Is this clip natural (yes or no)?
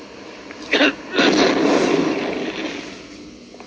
yes